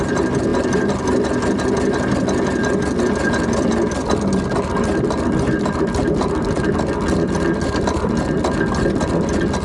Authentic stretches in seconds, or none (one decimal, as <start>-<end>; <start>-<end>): 0.0-9.6